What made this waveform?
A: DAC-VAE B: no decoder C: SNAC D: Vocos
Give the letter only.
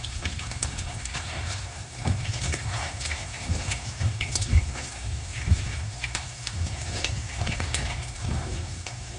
C